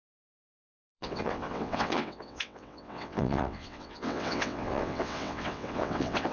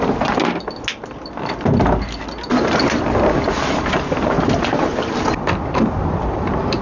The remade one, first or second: first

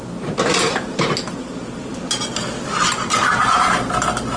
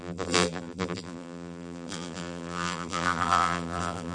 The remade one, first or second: second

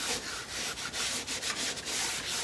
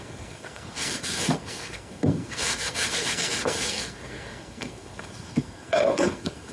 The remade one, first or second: second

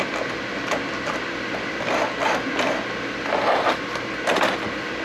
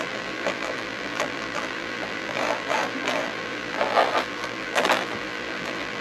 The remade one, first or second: second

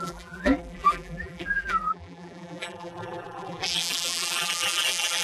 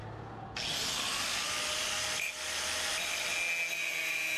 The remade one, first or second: first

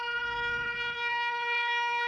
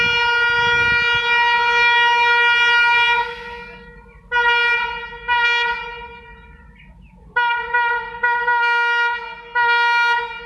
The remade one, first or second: first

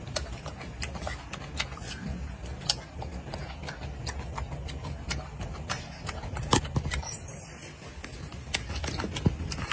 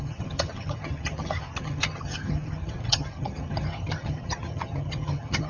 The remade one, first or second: second